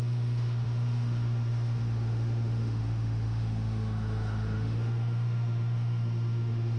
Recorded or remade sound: remade